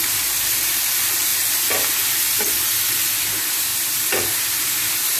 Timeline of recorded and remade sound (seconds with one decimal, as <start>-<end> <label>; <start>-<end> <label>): 0.0-1.3 remade; 1.3-2.4 recorded; 2.4-3.7 remade; 3.7-4.6 recorded; 4.6-5.2 remade

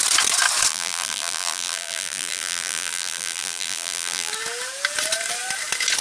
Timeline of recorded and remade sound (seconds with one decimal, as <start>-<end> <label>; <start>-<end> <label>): 0.0-0.7 recorded; 0.7-4.3 remade; 4.3-6.0 recorded

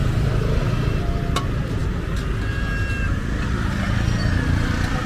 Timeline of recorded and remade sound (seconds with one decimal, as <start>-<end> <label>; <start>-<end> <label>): 0.0-5.1 recorded

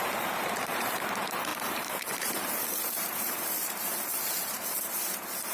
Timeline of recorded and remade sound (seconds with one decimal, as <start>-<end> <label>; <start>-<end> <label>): 0.0-5.5 remade

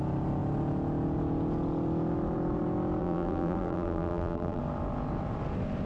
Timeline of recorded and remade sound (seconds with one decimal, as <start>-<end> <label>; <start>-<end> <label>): 0.0-3.0 recorded; 3.0-4.6 remade; 4.6-5.9 recorded

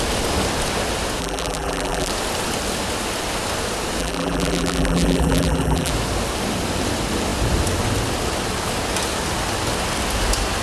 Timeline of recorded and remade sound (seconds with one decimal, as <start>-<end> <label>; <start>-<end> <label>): 0.0-1.2 recorded; 1.2-2.1 remade; 2.1-4.0 recorded; 4.0-5.9 remade; 5.9-10.6 recorded

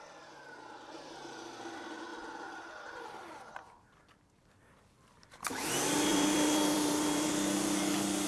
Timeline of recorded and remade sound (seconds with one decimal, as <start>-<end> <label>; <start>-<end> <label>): 0.0-2.1 recorded; 2.1-4.6 remade; 4.6-6.1 recorded; 6.1-7.3 remade; 7.3-8.3 recorded

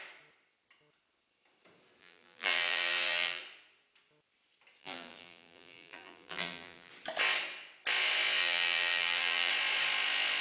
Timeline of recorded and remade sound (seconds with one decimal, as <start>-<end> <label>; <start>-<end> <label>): 0.0-2.0 recorded; 2.0-3.4 remade; 3.4-4.8 recorded; 4.8-6.9 remade; 6.9-8.4 recorded; 8.4-9.5 remade; 9.5-10.4 recorded